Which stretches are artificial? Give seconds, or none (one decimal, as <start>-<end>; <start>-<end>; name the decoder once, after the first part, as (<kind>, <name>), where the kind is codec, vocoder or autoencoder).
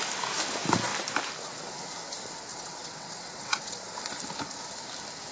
2.5-3.9 (vocoder, WaveNeXt)